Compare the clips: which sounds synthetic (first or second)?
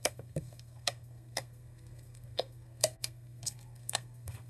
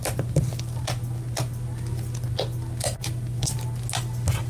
first